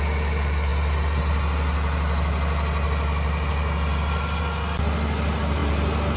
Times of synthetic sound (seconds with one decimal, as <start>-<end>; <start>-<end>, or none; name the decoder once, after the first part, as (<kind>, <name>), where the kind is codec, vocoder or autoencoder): none